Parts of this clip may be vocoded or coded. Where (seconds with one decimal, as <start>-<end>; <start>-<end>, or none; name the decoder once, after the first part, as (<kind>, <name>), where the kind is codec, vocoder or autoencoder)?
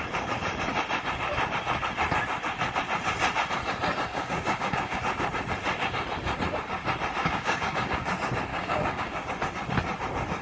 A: 4.1-5.0 (codec, DAC); 7.2-8.1; 8.5-9.3